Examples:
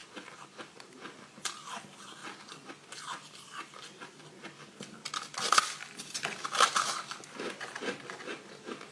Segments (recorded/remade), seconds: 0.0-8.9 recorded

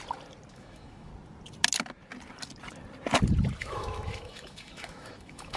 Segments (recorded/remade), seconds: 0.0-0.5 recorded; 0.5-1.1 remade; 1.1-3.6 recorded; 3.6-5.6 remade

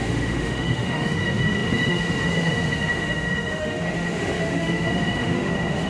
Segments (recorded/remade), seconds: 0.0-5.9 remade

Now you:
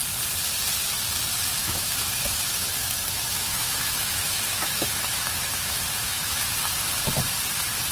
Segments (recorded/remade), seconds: 0.0-1.6 recorded; 1.6-6.3 remade; 6.3-7.9 recorded

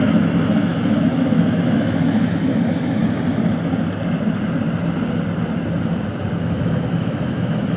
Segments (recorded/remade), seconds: 0.0-3.0 remade; 3.0-6.4 recorded; 6.4-7.8 remade